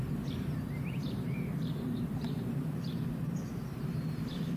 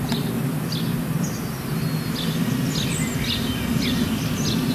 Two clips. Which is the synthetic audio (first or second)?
first